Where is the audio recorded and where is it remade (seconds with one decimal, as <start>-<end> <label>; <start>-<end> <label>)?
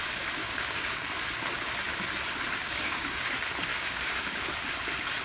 0.0-0.4 recorded; 0.4-1.1 remade; 1.1-2.6 recorded; 2.6-3.3 remade; 3.3-3.7 recorded; 3.7-4.4 remade; 4.4-5.2 recorded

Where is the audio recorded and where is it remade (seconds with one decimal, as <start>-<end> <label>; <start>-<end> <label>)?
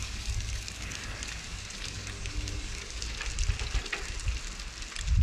0.0-3.0 remade; 3.0-5.2 recorded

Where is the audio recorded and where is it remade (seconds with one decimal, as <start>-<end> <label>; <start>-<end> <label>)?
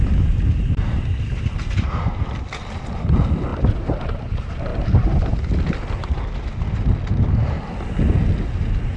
0.0-9.0 recorded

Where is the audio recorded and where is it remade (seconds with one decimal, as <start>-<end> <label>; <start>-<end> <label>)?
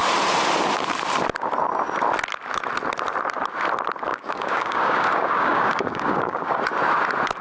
0.0-4.1 recorded; 4.1-6.6 remade; 6.6-7.4 recorded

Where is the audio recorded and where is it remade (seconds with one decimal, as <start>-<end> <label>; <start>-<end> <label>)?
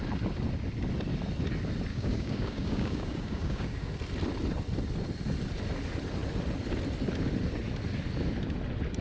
0.0-1.9 recorded; 1.9-3.9 remade; 3.9-9.0 recorded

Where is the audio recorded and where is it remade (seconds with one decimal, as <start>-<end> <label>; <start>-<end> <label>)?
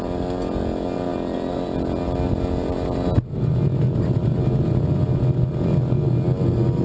0.0-6.8 recorded